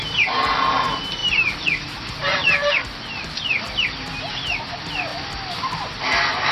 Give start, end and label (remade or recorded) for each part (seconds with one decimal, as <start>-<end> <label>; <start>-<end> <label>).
0.0-6.5 recorded